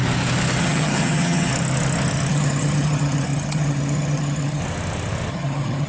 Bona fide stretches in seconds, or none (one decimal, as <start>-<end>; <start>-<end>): 0.0-0.6; 1.5-2.3; 4.6-5.3